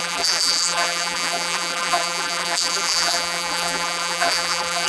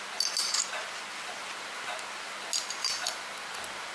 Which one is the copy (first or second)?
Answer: first